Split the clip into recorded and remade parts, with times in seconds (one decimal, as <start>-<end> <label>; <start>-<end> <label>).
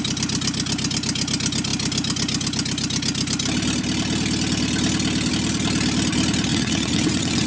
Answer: 0.0-6.5 recorded; 6.5-7.5 remade